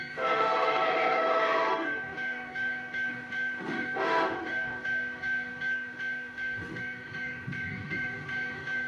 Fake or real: fake